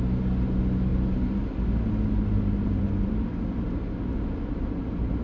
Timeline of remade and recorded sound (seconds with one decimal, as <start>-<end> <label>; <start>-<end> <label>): 0.0-5.2 recorded